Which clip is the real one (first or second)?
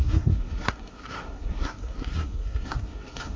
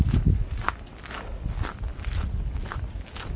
second